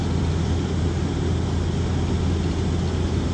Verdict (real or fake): real